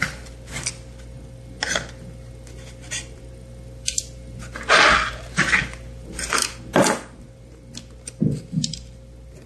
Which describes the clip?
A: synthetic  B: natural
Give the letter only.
B